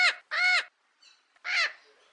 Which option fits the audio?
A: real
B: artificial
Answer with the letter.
A